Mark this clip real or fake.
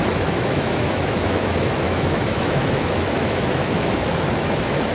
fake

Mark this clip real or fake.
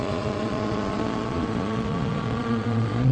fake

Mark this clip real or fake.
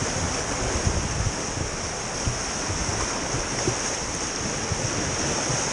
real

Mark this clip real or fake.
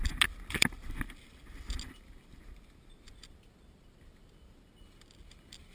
real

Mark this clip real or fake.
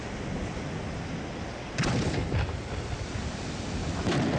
real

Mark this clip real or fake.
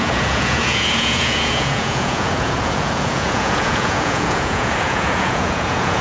fake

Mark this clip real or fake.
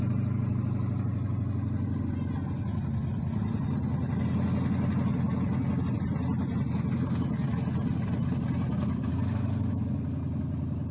real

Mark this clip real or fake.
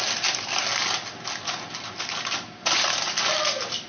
real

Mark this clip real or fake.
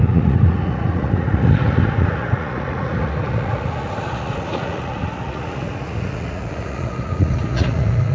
fake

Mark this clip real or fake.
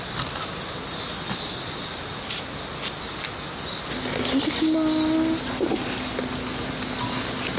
real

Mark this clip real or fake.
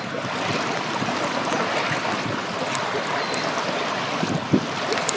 real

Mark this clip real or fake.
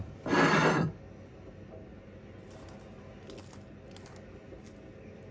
real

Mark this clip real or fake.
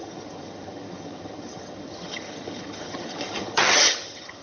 fake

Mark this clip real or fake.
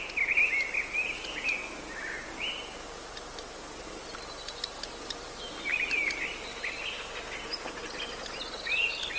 real